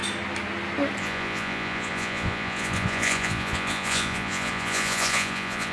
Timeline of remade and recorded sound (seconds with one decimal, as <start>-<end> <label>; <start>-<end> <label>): 0.0-1.0 recorded; 1.0-5.7 remade

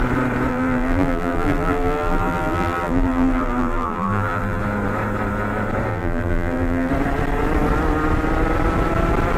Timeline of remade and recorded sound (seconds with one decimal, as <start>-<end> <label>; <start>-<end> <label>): 0.0-0.5 recorded; 0.5-4.6 remade; 4.6-5.9 recorded; 5.9-6.9 remade; 6.9-9.4 recorded

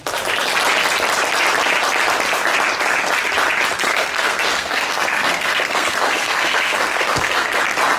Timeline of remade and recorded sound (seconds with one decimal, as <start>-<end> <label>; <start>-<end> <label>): 0.0-3.9 recorded; 3.9-7.6 remade; 7.6-8.0 recorded

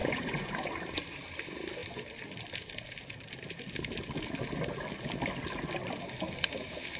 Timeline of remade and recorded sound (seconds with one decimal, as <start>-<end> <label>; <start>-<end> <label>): 0.0-0.7 remade; 0.7-7.0 recorded

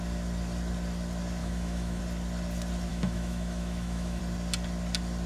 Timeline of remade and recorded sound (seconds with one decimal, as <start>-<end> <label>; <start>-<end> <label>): 0.0-1.4 recorded; 1.4-2.0 remade; 2.0-2.9 recorded; 2.9-4.2 remade; 4.2-5.3 recorded

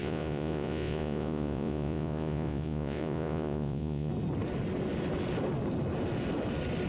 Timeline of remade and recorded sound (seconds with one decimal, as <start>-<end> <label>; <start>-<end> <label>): 0.0-4.1 remade; 4.1-6.9 recorded

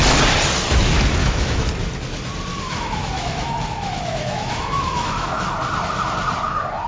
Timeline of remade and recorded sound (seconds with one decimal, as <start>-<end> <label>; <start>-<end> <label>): 0.0-1.2 recorded; 1.2-1.7 remade; 1.7-2.5 recorded; 2.5-5.5 remade; 5.5-6.9 recorded

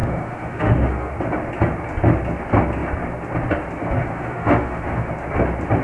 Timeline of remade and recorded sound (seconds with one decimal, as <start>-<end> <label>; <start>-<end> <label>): 0.0-1.1 remade; 1.1-4.0 recorded; 4.0-5.1 remade; 5.1-5.8 recorded